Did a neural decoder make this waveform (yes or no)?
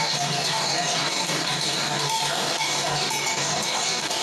yes